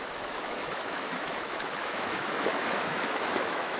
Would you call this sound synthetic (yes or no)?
yes